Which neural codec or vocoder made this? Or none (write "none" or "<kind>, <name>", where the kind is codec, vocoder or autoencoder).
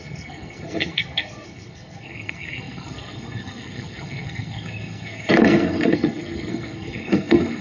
codec, SNAC